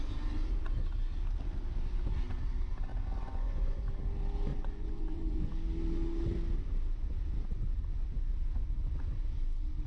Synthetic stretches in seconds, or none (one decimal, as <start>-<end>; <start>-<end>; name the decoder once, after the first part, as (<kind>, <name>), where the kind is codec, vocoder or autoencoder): 2.9-3.7 (vocoder, Vocos); 4.5-5.5